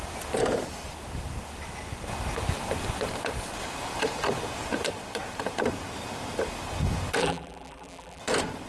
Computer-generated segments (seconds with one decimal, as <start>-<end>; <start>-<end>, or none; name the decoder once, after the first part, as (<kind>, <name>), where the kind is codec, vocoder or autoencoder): 7.2-8.2 (vocoder, BigVGAN v2)